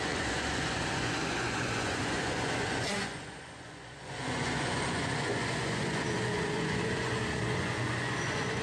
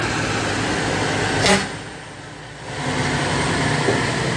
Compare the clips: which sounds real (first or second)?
second